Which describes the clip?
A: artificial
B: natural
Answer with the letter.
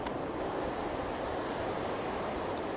A